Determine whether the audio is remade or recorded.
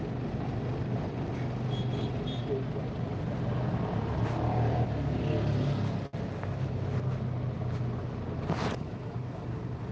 recorded